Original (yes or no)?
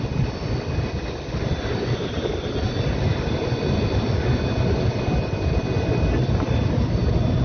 yes